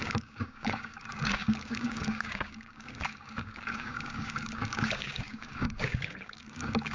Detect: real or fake fake